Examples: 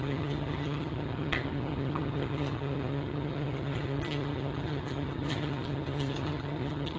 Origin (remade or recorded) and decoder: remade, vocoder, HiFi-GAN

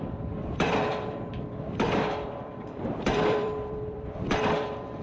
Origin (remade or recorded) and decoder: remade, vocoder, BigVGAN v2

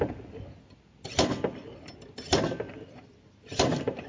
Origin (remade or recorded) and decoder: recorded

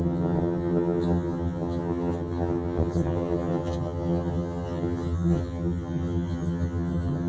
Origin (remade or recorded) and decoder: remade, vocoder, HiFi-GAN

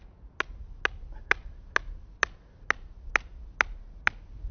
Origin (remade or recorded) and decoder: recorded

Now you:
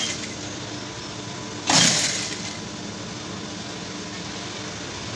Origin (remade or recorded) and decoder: recorded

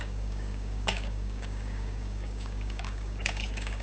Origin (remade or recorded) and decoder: remade, codec, DAC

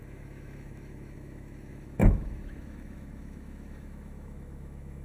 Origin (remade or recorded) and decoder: remade, autoencoder, DAC-VAE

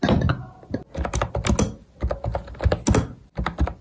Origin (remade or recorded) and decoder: recorded